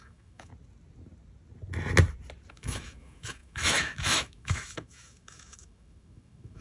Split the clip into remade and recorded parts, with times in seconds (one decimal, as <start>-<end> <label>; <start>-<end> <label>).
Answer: 0.0-0.5 remade; 0.5-2.5 recorded; 2.5-6.6 remade